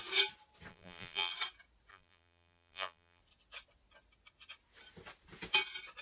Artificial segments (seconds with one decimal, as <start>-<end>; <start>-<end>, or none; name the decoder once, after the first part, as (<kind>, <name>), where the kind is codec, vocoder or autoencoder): 0.7-1.3 (vocoder, BigVGAN v2); 1.9-3.2